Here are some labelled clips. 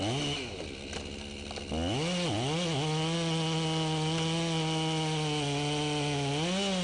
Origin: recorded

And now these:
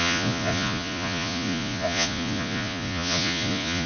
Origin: remade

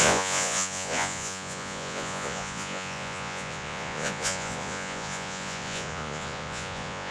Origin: remade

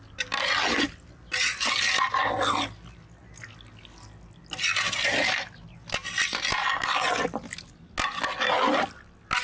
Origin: recorded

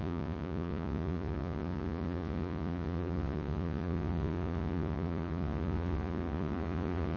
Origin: remade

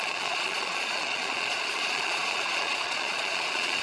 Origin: remade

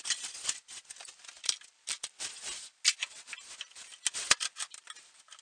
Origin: recorded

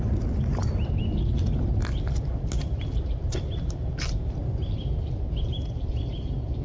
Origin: recorded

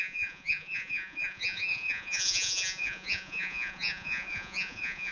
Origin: remade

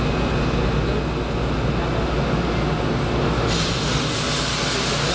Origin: recorded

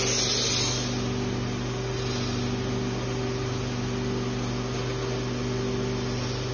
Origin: recorded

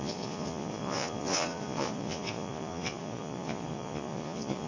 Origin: remade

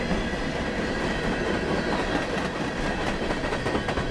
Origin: recorded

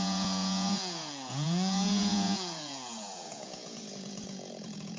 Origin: remade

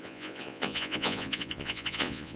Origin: remade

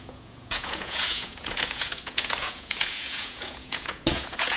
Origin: remade